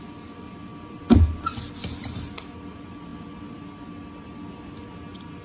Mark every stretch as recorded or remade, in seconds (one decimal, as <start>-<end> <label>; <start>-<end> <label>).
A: 0.0-5.4 recorded